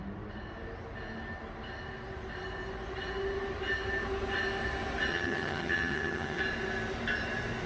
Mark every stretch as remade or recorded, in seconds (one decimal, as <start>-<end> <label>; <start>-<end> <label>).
0.0-5.1 recorded; 5.1-6.4 remade; 6.4-7.7 recorded